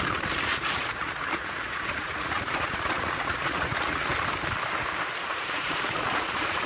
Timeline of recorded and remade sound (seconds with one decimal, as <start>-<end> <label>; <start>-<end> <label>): 0.0-0.5 recorded; 0.5-4.1 remade; 4.1-5.2 recorded; 5.2-6.7 remade